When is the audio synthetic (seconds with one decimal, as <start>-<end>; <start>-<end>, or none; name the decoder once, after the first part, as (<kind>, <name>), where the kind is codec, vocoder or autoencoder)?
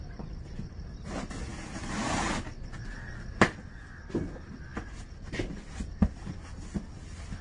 4.7-6.4 (vocoder, BigVGAN v2)